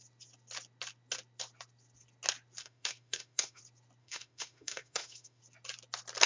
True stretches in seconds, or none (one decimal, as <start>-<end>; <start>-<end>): 0.0-2.6; 3.6-4.0; 5.4-6.3